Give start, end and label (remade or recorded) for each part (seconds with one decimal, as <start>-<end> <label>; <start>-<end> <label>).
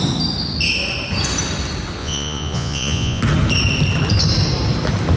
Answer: 0.0-2.0 recorded; 2.0-3.2 remade; 3.2-5.2 recorded